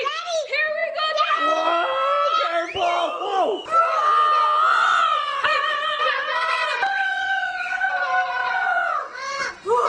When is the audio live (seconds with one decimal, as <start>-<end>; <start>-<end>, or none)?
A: 0.0-4.7; 7.9-8.4; 9.5-9.9